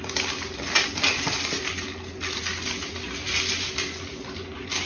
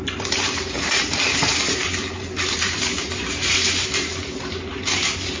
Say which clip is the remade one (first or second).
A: second